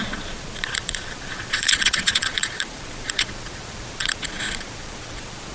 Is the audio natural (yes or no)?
no